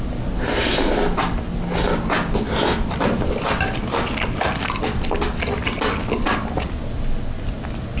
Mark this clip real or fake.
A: real